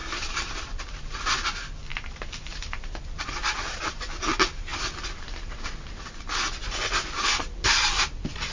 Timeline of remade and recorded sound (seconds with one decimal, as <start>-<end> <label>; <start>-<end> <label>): 0.0-0.5 remade; 0.5-1.9 recorded; 1.9-4.0 remade; 4.0-8.5 recorded